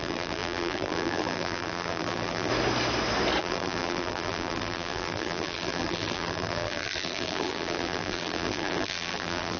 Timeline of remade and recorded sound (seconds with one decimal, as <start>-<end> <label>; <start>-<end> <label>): 0.0-2.5 remade; 2.5-3.4 recorded; 3.4-9.6 remade